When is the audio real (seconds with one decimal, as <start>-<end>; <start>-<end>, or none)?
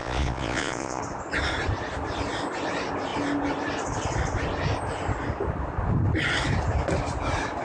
1.0-7.6